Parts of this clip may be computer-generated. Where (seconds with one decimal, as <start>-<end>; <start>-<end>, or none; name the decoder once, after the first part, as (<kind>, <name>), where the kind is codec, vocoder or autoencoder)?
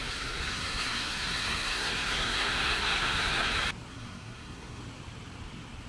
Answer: 0.0-3.5 (codec, SNAC); 3.9-4.8